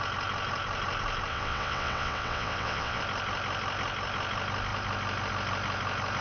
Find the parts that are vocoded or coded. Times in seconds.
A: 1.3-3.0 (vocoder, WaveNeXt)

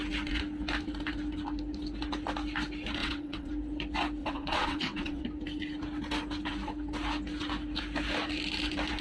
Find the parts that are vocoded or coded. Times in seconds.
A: 3.0-3.5 (vocoder, WaveNeXt); 4.2-5.2